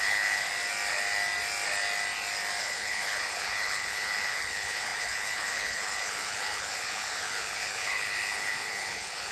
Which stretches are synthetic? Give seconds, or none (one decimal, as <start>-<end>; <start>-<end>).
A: 0.0-0.5; 2.6-9.3